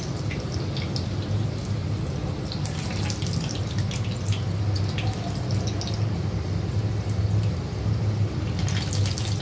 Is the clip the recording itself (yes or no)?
yes